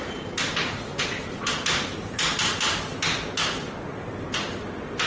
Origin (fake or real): real